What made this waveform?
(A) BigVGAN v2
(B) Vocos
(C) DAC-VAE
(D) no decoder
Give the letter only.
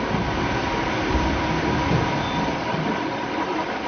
D